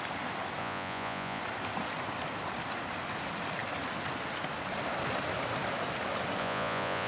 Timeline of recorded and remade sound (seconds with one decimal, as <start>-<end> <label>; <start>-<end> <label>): 0.0-0.6 recorded; 0.6-1.4 remade; 1.4-6.4 recorded; 6.4-7.1 remade